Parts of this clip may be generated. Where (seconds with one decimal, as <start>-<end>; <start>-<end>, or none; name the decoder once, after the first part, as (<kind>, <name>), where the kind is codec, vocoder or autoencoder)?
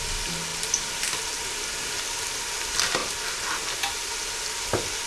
none